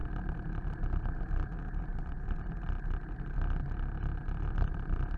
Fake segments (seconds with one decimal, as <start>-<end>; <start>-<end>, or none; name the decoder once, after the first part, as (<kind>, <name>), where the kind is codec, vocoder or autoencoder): none